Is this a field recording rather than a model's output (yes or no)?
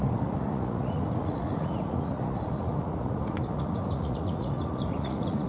no